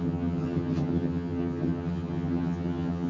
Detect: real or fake fake